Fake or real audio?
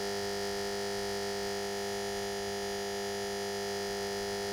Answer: real